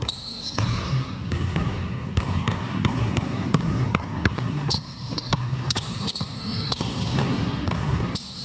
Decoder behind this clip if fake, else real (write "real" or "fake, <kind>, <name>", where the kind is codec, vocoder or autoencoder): fake, codec, SNAC